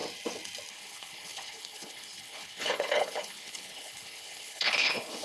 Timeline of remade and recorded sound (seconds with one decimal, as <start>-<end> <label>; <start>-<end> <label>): 0.0-0.7 recorded; 0.7-5.2 remade